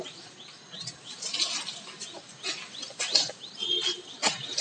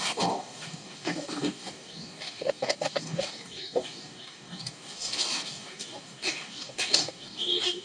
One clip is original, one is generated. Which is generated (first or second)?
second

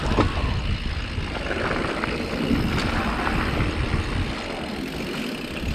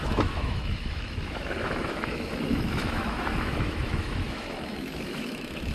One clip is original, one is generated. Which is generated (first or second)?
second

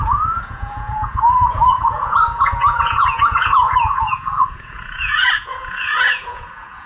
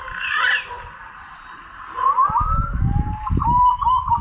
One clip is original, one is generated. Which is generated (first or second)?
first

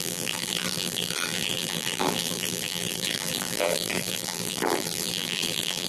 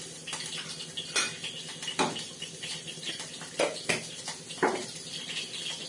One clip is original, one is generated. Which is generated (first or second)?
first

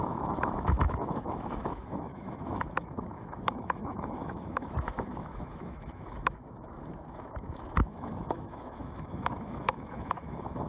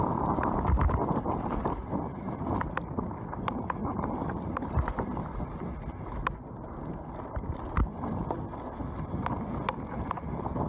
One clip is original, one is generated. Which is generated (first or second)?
first